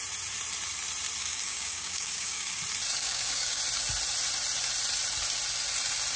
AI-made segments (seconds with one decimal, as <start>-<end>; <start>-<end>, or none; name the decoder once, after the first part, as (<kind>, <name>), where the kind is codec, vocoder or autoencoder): 1.2-2.6 (codec, DAC); 3.0-3.6